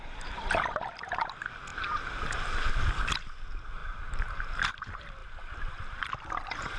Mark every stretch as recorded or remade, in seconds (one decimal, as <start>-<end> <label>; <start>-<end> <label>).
0.0-1.7 remade; 1.7-2.7 recorded; 2.7-5.2 remade; 5.2-5.8 recorded; 5.8-6.8 remade